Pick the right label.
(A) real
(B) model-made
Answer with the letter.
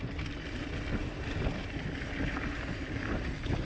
A